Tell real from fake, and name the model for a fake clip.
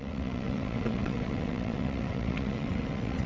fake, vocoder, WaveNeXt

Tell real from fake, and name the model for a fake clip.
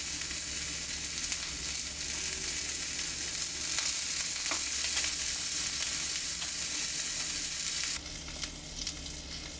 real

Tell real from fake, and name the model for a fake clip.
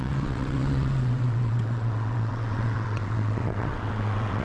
fake, vocoder, WaveNeXt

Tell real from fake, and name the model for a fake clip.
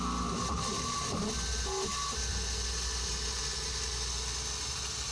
real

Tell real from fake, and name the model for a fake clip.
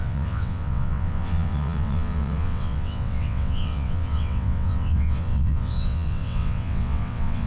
fake, vocoder, WaveNeXt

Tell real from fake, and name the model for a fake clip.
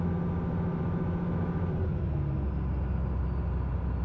real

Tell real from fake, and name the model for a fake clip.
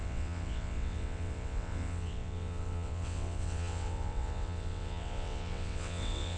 fake, vocoder, WaveNeXt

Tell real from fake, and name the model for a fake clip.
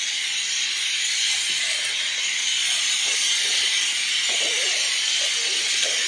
real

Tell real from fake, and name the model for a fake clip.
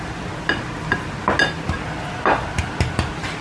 real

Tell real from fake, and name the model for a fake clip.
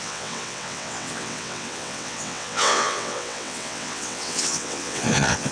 fake, vocoder, WaveNeXt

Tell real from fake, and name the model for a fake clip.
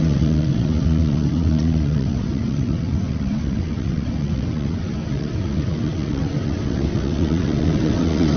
fake, vocoder, WaveNeXt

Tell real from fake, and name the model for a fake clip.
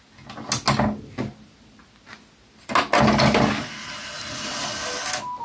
real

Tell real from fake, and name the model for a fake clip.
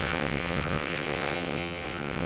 fake, vocoder, WaveNeXt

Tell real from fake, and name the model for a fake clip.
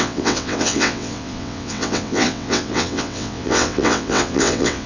fake, vocoder, WaveNeXt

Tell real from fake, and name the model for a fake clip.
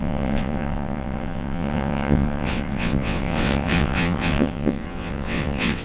fake, vocoder, WaveNeXt